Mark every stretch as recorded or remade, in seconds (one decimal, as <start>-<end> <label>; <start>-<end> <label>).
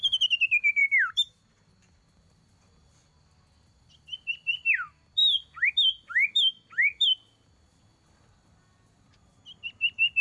0.0-10.2 recorded